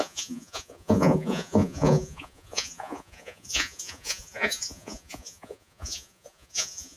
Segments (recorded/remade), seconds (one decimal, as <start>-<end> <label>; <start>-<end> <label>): 0.0-7.0 remade